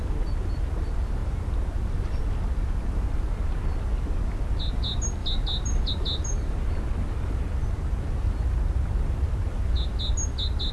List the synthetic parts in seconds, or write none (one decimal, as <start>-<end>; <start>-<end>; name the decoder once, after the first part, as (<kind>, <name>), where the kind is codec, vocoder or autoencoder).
none